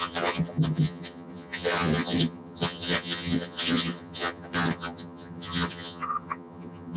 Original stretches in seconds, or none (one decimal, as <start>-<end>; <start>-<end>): none